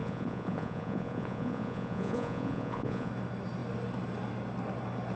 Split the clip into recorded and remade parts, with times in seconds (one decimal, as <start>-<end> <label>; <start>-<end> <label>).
0.0-3.1 remade; 3.1-5.2 recorded